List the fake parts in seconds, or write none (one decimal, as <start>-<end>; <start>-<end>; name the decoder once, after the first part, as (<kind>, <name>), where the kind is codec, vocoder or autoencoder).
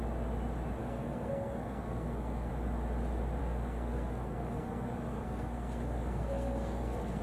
0.8-2.5 (codec, SNAC); 3.4-7.2